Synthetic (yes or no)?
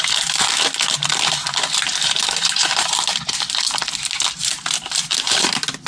yes